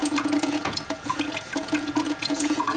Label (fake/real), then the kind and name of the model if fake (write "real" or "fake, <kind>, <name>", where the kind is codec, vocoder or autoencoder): fake, vocoder, Vocos